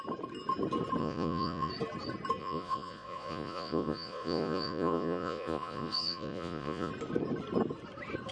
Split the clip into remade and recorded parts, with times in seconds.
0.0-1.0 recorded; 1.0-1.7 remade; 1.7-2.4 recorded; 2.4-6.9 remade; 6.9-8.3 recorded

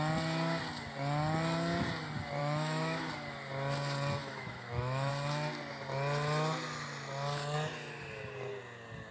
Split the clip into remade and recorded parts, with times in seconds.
0.0-2.4 recorded; 2.4-3.1 remade; 3.1-4.2 recorded; 4.2-5.1 remade; 5.1-9.1 recorded

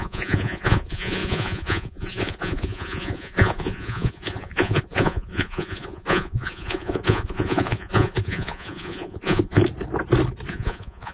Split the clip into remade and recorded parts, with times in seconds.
0.0-9.6 remade; 9.6-10.5 recorded; 10.5-11.1 remade